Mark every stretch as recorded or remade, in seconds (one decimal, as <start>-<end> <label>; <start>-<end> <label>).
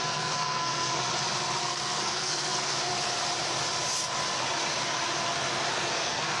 0.0-1.1 remade; 1.1-1.6 recorded; 1.6-2.9 remade; 2.9-5.7 recorded; 5.7-6.4 remade